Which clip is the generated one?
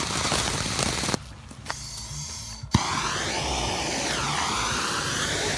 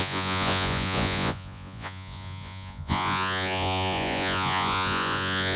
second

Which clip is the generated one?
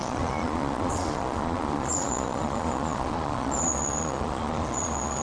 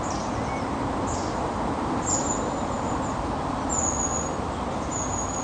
first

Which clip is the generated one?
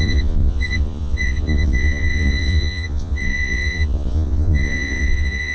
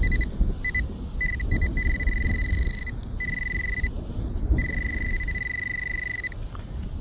first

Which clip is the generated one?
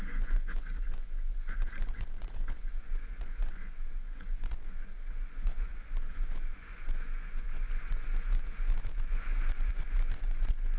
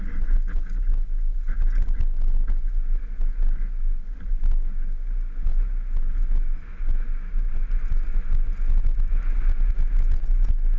first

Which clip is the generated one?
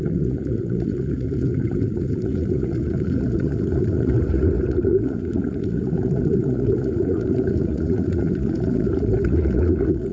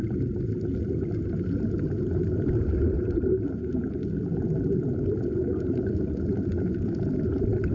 first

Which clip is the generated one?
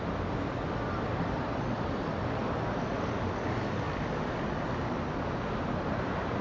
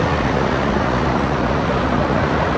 second